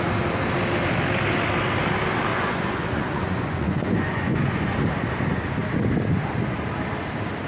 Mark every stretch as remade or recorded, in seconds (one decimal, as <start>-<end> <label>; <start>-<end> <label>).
0.0-2.3 recorded; 2.3-4.8 remade; 4.8-7.5 recorded